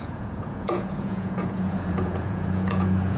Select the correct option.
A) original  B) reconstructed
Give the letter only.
B